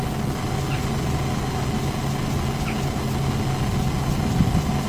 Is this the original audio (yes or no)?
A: yes